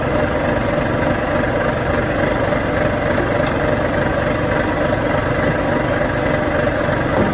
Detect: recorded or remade recorded